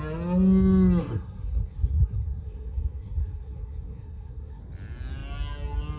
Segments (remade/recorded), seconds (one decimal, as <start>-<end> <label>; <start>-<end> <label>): 0.0-1.0 recorded; 1.0-4.6 remade; 4.6-6.0 recorded